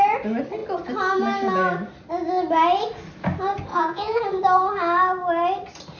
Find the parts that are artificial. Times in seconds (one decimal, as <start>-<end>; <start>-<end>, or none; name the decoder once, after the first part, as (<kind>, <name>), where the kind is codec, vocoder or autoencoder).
3.7-4.2 (vocoder, Vocos)